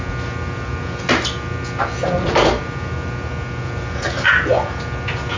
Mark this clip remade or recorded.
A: recorded